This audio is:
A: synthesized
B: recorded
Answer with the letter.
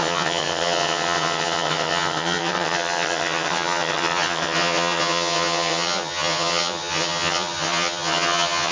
A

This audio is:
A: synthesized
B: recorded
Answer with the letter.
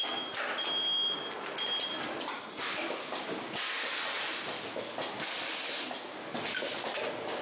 B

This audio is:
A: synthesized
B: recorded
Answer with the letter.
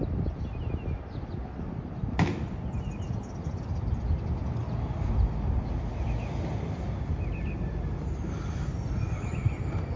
B